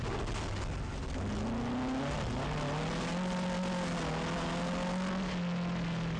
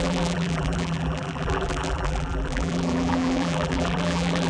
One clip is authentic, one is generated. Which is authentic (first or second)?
first